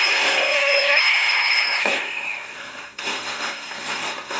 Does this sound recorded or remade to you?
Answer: remade